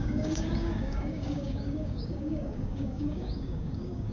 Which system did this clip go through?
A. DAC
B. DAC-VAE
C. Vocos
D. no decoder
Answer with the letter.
A